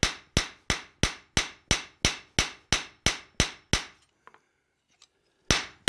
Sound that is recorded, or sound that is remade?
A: recorded